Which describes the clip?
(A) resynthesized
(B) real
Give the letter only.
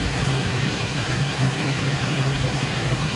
A